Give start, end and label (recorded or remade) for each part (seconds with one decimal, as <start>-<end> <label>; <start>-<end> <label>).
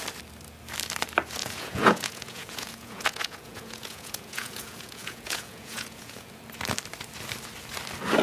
0.0-1.4 recorded; 1.4-6.3 remade; 6.3-8.2 recorded